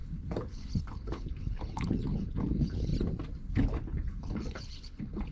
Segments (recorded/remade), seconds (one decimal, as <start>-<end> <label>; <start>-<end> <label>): 0.0-2.9 remade; 2.9-3.5 recorded; 3.5-5.3 remade